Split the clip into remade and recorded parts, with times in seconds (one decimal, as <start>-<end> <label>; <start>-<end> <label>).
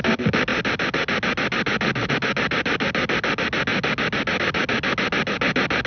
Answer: 0.0-5.9 recorded